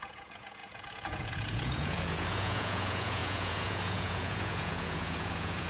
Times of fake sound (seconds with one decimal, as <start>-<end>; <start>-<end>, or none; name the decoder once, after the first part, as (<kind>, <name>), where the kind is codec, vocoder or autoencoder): 0.0-5.7 (vocoder, Vocos)